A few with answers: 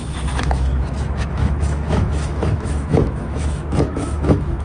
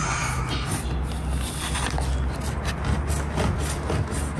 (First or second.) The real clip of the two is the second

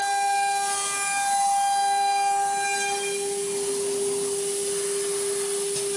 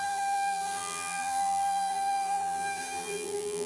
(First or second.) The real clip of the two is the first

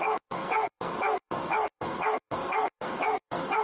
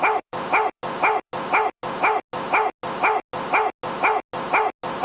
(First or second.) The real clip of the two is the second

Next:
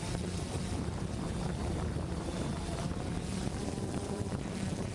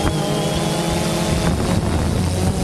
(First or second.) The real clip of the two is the second